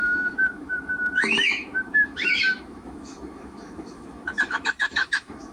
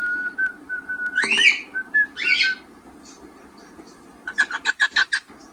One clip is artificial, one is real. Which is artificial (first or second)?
first